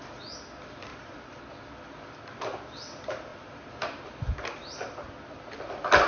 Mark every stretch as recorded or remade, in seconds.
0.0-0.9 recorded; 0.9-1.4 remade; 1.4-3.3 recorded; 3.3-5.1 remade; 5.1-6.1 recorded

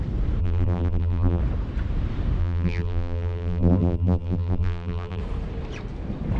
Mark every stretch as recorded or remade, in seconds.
0.0-0.4 recorded; 0.4-1.4 remade; 1.4-2.4 recorded; 2.4-5.2 remade; 5.2-6.4 recorded

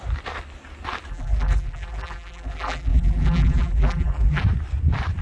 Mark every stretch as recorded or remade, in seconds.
0.0-1.1 recorded; 1.1-4.4 remade; 4.4-5.2 recorded

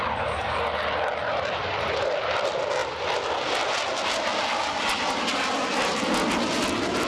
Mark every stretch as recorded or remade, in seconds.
0.0-0.4 remade; 0.4-1.3 recorded; 1.3-2.8 remade; 2.8-7.1 recorded

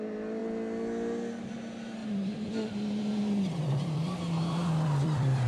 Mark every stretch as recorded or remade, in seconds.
0.0-2.0 recorded; 2.0-5.5 remade

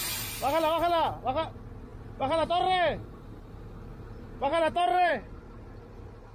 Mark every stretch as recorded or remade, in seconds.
0.0-1.9 recorded; 1.9-2.5 remade; 2.5-3.9 recorded; 3.9-5.1 remade; 5.1-6.3 recorded